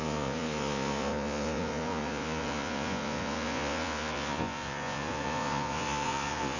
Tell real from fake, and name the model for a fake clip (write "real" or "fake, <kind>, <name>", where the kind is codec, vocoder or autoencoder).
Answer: fake, vocoder, Vocos